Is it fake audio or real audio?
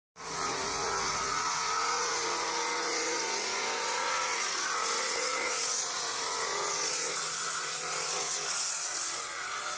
fake